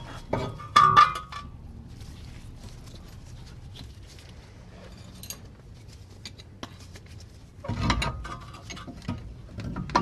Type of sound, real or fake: real